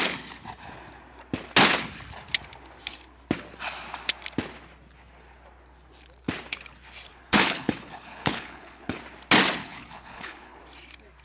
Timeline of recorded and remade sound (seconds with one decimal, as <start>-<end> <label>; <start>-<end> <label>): 0.0-7.1 recorded; 7.1-9.0 remade; 9.0-9.6 recorded; 9.6-10.6 remade; 10.6-11.2 recorded